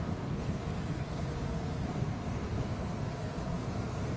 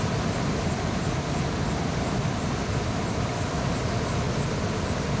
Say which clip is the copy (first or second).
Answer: first